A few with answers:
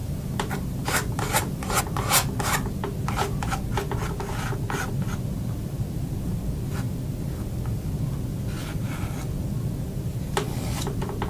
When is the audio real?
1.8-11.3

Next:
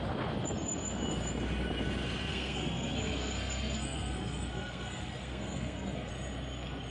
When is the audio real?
0.0-2.3; 6.1-6.9

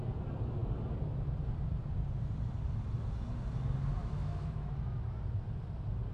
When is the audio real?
0.0-4.0; 4.7-6.1

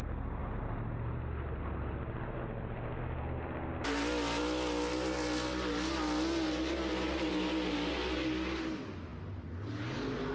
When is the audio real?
0.0-10.3

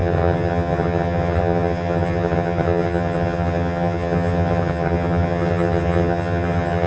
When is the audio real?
none